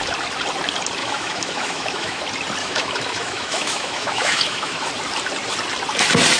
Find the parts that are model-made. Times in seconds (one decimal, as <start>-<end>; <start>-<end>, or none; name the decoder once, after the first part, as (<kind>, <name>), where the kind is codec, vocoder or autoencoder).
1.0-2.2 (autoencoder, DAC-VAE); 2.6-4.9